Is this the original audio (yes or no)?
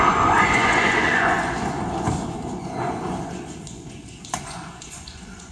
no